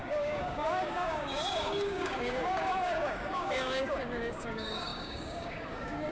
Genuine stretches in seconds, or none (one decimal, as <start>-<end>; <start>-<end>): none